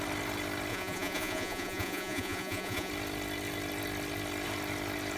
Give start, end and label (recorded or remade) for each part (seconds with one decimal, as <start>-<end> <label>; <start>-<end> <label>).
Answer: 0.0-0.7 recorded; 0.7-2.9 remade; 2.9-5.2 recorded